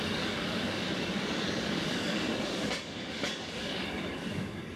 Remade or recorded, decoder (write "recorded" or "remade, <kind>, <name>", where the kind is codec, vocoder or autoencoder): remade, codec, DAC